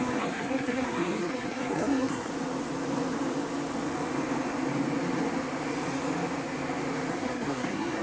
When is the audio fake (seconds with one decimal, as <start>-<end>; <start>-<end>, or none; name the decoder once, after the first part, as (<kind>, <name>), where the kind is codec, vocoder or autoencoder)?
0.0-2.3 (codec, SNAC); 7.1-8.0